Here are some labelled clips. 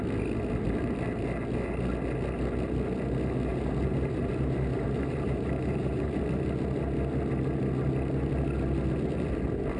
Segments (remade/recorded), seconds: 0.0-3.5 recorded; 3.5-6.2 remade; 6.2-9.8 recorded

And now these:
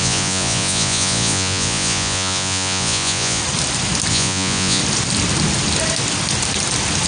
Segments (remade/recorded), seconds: 0.0-3.4 remade; 3.4-4.1 recorded; 4.1-4.8 remade; 4.8-7.1 recorded

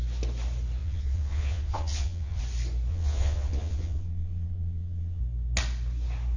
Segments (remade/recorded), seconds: 0.0-0.8 recorded; 0.8-2.4 remade; 2.4-2.9 recorded; 2.9-5.2 remade; 5.2-6.4 recorded

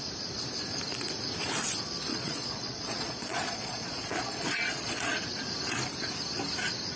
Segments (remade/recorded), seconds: 0.0-2.1 recorded; 2.1-5.2 remade; 5.2-7.0 recorded